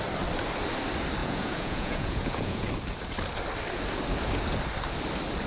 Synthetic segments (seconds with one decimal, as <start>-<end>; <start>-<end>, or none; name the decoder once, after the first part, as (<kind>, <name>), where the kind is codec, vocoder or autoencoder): 1.2-2.7 (vocoder, Vocos)